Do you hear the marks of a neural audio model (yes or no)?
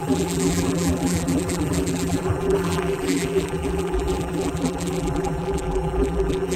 yes